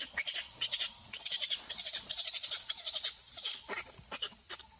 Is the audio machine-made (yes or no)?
yes